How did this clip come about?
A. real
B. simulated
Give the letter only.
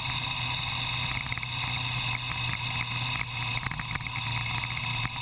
A